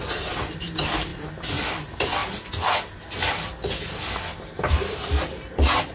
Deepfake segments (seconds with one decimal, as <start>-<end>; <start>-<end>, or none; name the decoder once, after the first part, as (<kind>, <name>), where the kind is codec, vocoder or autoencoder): none